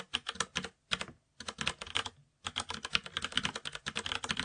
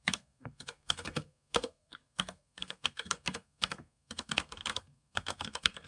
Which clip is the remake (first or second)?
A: second